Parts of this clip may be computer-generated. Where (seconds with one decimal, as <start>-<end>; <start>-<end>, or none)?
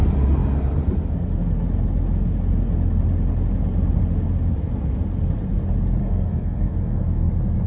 6.0-7.3